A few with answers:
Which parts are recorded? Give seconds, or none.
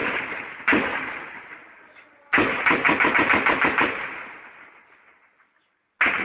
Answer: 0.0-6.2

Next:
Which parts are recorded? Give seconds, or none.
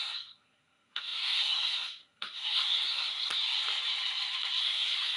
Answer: 3.3-4.6